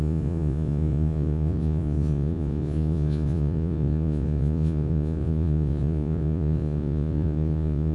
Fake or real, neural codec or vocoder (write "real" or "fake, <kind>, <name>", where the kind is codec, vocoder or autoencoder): fake, vocoder, Vocos